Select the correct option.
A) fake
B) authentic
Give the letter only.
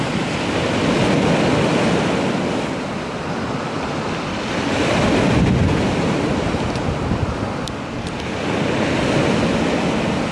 B